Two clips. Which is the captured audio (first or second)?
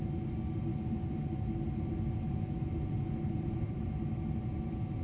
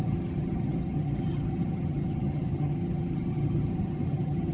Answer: first